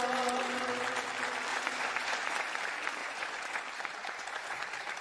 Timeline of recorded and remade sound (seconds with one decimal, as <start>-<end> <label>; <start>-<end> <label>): 0.0-1.5 recorded; 1.5-2.3 remade; 2.3-3.0 recorded; 3.0-3.6 remade; 3.6-4.0 recorded; 4.0-4.6 remade; 4.6-5.0 recorded